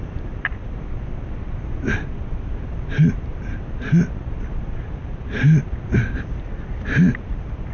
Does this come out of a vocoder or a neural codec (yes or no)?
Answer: no